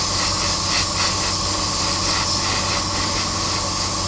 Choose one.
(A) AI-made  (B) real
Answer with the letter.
B